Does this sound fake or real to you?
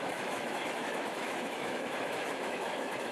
fake